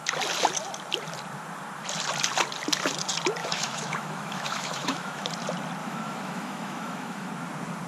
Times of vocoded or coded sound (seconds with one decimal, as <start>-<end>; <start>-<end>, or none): 3.4-5.3; 5.8-7.3